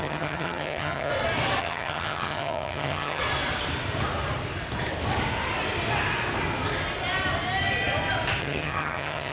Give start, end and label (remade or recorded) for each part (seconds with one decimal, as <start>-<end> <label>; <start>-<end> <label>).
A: 0.0-1.1 remade; 1.1-1.6 recorded; 1.6-3.2 remade; 3.2-8.4 recorded; 8.4-9.3 remade